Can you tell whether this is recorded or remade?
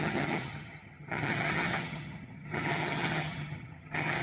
remade